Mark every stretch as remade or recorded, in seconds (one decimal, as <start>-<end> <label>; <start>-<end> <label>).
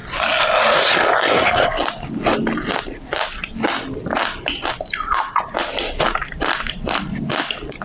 0.0-7.8 recorded